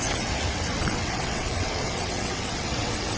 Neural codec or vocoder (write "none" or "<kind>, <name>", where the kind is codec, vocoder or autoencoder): vocoder, WaveNeXt